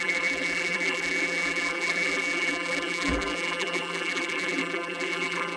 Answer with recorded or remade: remade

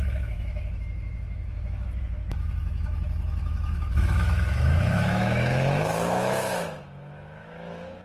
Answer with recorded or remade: remade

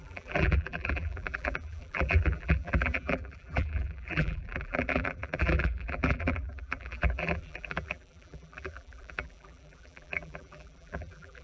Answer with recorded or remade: remade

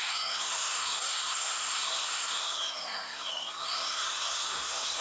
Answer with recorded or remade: remade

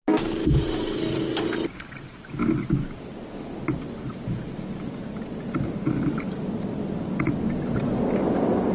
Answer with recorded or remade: recorded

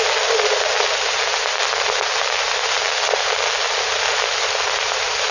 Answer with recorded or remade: recorded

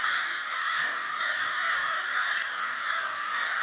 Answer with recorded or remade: remade